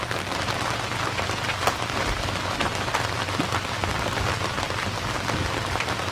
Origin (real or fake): real